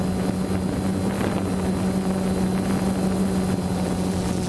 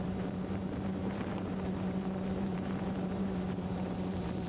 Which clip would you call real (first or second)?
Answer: first